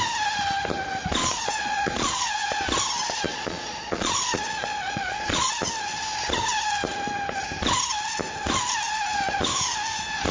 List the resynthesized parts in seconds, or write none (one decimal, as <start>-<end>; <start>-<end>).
1.2-2.3; 3.3-5.5